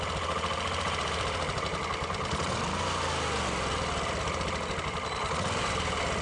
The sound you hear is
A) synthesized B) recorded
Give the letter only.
B